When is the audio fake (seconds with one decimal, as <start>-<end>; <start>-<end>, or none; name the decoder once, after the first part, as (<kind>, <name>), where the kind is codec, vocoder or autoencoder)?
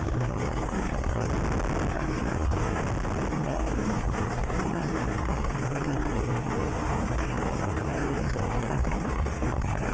0.0-1.3 (codec, SNAC); 1.9-2.8; 3.3-9.9